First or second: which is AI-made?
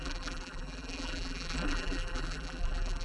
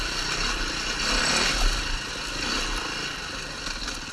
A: first